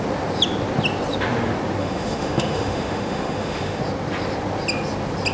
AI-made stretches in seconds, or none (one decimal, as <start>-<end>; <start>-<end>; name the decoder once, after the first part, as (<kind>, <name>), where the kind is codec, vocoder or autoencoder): 1.8-3.8 (autoencoder, DAC-VAE)